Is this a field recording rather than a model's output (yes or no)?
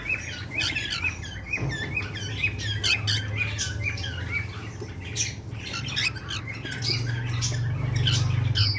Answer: yes